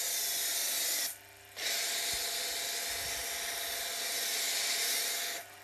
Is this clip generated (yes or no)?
no